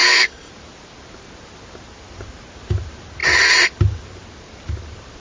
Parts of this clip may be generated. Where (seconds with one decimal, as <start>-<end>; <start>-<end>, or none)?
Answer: 0.0-0.5